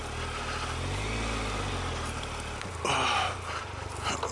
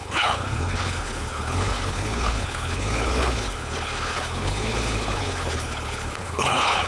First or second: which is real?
first